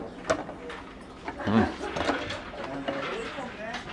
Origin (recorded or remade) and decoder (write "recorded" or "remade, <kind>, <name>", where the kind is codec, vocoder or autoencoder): recorded